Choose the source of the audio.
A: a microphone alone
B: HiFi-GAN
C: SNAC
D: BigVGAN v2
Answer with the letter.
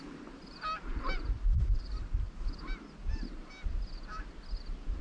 A